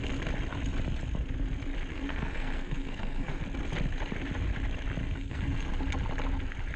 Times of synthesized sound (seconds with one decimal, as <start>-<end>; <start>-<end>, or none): 1.9-3.4; 5.0-5.7